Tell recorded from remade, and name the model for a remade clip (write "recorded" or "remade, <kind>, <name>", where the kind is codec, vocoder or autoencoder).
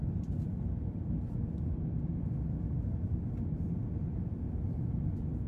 recorded